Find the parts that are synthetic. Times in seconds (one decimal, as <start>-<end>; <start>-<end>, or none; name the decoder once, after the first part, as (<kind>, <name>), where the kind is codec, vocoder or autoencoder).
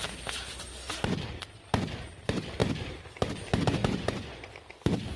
3.8-4.5 (vocoder, Vocos)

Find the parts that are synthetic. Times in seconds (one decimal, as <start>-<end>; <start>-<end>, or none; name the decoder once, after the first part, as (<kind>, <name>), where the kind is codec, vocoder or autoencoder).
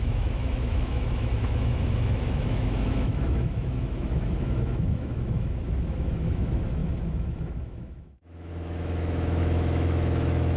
0.0-10.6 (autoencoder, DAC-VAE)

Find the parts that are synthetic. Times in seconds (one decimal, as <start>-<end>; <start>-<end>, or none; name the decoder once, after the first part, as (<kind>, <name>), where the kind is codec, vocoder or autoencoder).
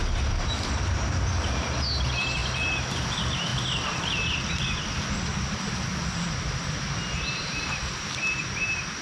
none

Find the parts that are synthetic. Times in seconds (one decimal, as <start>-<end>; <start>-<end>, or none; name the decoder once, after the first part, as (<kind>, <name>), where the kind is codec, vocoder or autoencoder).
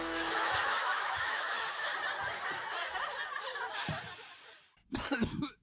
0.0-1.9 (autoencoder, DAC-VAE); 5.1-5.6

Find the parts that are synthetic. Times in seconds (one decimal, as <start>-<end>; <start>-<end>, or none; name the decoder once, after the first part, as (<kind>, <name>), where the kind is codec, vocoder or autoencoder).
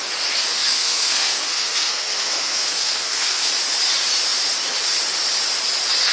0.5-3.5 (codec, SNAC)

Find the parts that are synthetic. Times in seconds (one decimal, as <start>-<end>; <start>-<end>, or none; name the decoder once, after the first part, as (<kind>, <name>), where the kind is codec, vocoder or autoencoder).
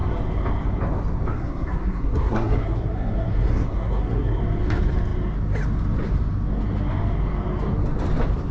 1.3-4.4 (codec, SNAC)